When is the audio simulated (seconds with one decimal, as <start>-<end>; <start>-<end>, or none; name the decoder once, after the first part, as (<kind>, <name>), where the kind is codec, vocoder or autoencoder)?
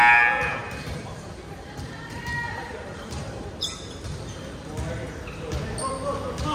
0.6-4.2 (vocoder, BigVGAN v2)